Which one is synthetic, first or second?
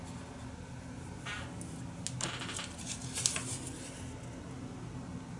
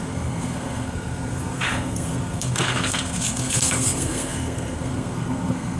second